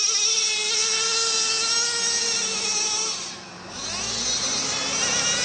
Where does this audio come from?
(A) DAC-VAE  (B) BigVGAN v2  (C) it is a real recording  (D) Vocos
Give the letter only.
C